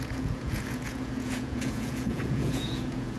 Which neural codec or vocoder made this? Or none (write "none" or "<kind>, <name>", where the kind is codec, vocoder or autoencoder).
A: vocoder, Vocos